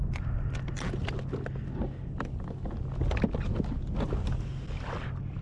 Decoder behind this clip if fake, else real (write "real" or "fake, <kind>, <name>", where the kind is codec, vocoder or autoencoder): real